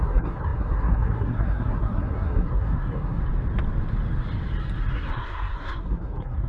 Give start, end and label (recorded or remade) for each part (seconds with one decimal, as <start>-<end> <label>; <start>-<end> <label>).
0.0-3.2 remade; 3.2-4.9 recorded; 4.9-6.5 remade